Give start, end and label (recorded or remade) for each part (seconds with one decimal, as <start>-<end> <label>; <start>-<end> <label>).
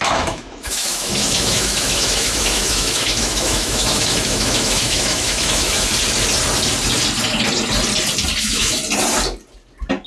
0.0-5.9 remade; 5.9-8.4 recorded; 8.4-8.8 remade; 8.8-10.1 recorded